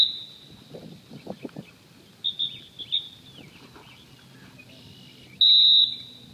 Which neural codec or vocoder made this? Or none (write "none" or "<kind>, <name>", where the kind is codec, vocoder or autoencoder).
none